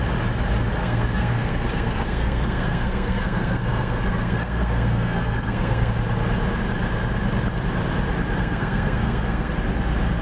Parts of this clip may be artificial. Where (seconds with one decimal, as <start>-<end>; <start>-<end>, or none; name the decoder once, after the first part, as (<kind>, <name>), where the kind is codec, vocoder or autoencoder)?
0.8-5.9 (codec, SNAC); 8.4-9.5